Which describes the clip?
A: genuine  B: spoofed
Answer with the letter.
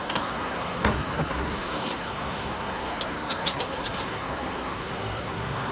B